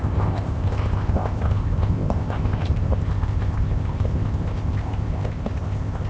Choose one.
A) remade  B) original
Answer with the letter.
A